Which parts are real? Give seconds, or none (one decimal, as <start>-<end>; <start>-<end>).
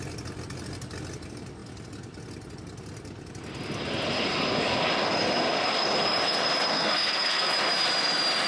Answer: 0.0-6.7; 7.5-8.5